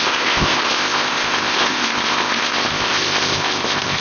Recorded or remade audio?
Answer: remade